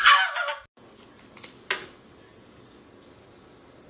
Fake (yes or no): no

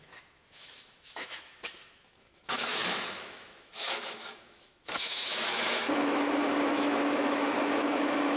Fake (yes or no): yes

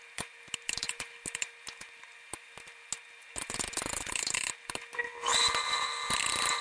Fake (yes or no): no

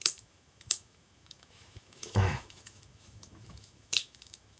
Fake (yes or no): yes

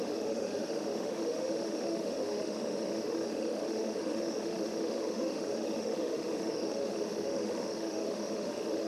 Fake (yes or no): yes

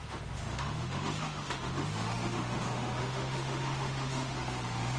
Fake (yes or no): yes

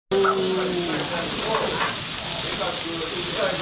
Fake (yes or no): no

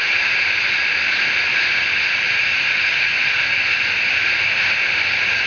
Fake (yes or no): no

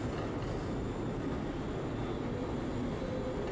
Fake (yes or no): no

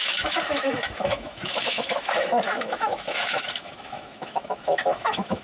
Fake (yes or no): yes